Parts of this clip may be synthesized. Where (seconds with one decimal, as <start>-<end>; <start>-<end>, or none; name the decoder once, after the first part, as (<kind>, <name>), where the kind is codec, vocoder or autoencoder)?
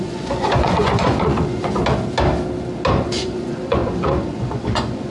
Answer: 0.0-1.8 (vocoder, Vocos); 2.9-5.1